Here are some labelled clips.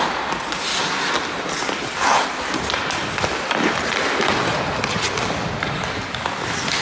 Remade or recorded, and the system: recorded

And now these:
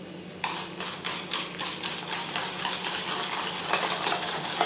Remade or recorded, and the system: recorded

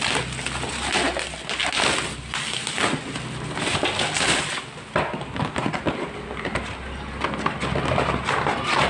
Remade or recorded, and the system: recorded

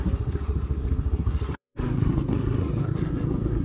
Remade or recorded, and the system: remade, codec, SNAC